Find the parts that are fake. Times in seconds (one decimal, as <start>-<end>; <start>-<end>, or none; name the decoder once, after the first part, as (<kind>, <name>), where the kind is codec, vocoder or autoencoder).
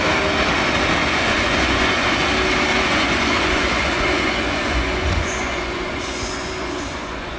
1.0-2.3 (vocoder, Vocos); 2.7-7.4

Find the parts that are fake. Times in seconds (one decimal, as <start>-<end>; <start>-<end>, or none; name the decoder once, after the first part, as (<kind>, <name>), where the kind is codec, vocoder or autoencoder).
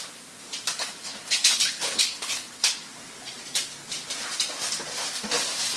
0.8-2.9 (codec, HILCodec)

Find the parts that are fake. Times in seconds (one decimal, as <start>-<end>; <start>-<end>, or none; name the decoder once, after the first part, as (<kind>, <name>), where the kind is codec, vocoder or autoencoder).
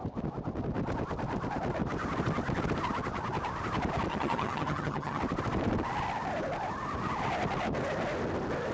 4.1-5.2 (vocoder, HiFi-GAN)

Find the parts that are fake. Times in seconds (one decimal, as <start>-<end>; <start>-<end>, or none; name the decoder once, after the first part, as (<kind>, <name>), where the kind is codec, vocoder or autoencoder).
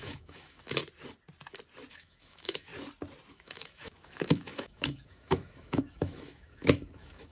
0.0-0.8 (autoencoder, DAC-VAE); 1.9-2.7; 3.3-7.3